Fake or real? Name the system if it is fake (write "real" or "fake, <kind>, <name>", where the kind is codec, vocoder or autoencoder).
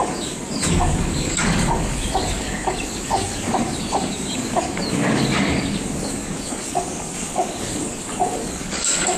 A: fake, codec, DAC